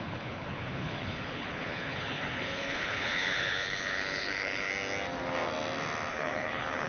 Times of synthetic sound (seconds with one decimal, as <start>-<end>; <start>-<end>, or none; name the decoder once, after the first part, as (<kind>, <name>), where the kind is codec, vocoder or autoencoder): 0.0-4.7 (codec, HILCodec); 6.1-6.9